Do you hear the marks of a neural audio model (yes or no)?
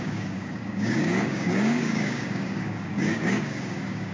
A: yes